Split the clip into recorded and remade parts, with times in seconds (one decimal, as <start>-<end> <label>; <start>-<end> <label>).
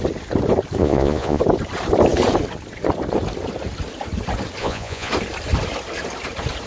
0.0-0.8 recorded; 0.8-1.4 remade; 1.4-4.6 recorded; 4.6-5.1 remade; 5.1-6.7 recorded